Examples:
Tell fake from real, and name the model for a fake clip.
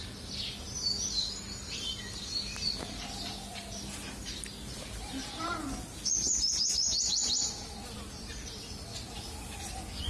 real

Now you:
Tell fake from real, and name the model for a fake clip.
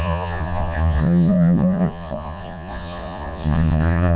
fake, vocoder, Vocos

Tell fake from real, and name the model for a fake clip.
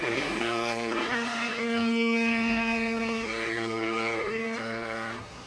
fake, codec, SNAC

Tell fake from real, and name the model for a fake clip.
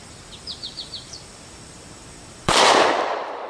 fake, vocoder, BigVGAN v2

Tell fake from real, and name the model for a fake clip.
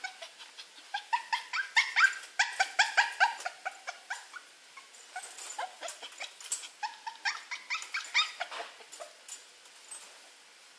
real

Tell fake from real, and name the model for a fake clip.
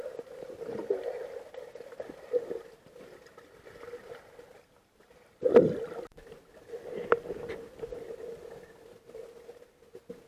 real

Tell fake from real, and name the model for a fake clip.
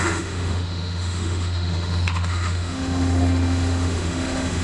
fake, autoencoder, DAC-VAE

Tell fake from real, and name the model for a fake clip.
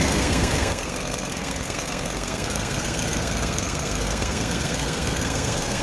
fake, codec, SNAC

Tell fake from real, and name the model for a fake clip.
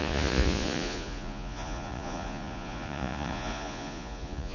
fake, vocoder, Vocos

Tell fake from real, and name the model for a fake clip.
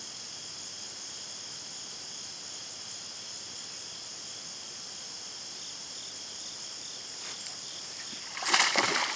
real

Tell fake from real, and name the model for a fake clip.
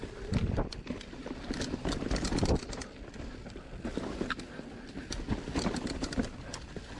real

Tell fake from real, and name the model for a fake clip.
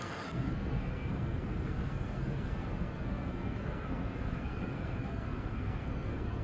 fake, codec, SNAC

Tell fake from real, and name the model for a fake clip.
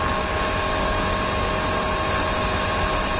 real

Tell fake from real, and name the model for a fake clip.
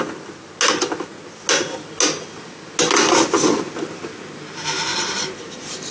real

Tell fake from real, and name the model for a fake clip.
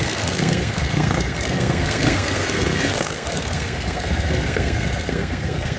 fake, codec, SNAC